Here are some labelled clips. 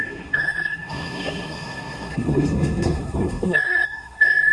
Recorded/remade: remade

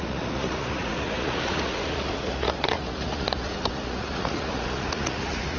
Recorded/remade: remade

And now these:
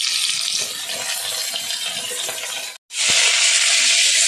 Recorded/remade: recorded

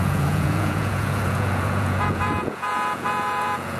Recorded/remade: remade